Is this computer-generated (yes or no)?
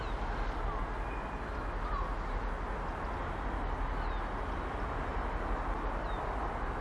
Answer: no